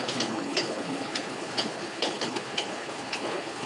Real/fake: fake